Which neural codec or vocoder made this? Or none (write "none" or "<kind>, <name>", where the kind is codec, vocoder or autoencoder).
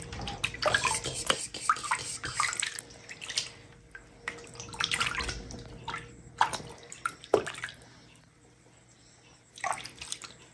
none